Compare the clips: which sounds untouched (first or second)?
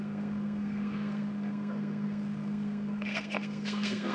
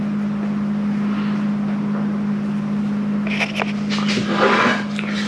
second